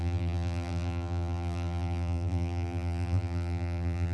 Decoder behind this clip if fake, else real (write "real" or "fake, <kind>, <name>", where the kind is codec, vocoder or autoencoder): fake, vocoder, BigVGAN v2